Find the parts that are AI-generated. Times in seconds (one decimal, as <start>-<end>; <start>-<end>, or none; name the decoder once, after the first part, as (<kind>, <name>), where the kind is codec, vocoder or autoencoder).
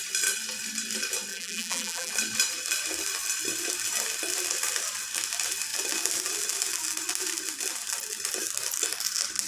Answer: 1.3-2.1 (vocoder, BigVGAN v2)